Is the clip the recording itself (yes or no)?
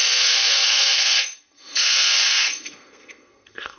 no